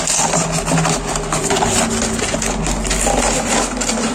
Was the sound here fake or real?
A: real